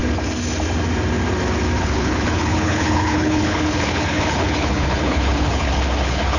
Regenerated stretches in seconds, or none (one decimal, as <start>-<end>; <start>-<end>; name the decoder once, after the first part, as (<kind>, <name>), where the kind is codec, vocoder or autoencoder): 1.8-6.4 (codec, HILCodec)